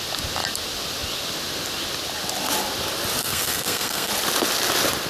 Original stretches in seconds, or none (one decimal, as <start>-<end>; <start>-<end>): 0.0-3.2; 4.1-5.1